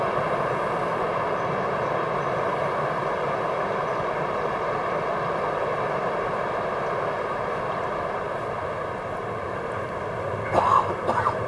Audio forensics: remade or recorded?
recorded